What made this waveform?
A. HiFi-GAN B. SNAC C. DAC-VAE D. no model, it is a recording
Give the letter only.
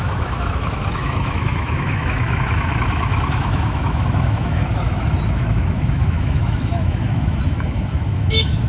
C